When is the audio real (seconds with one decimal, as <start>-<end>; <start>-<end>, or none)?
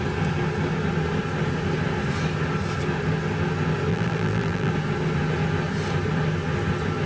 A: 0.0-3.9; 4.7-7.1